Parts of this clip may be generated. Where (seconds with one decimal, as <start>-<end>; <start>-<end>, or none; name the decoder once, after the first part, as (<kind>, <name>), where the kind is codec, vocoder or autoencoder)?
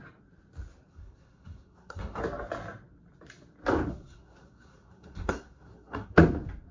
0.9-2.2 (codec, SNAC); 3.9-6.2